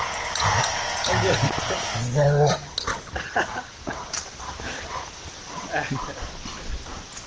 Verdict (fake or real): real